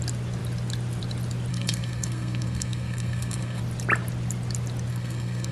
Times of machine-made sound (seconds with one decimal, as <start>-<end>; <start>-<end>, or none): 1.5-3.6; 4.9-5.5